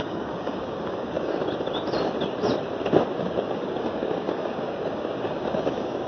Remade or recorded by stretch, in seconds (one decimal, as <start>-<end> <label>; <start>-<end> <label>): 0.0-1.4 remade; 1.4-3.2 recorded; 3.2-6.1 remade